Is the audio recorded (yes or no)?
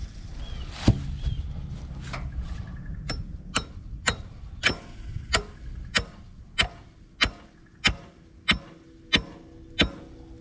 yes